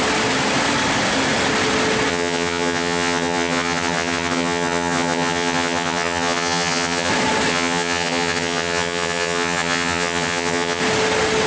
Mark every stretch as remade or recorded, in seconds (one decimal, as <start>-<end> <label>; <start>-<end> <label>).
0.0-2.1 recorded; 2.1-7.1 remade; 7.1-7.5 recorded; 7.5-10.8 remade; 10.8-11.5 recorded